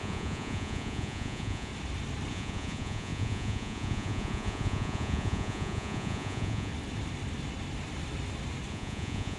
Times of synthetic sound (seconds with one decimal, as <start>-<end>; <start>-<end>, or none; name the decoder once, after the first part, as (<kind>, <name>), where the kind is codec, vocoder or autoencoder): 0.0-1.7 (vocoder, Vocos); 2.3-6.7; 8.7-9.4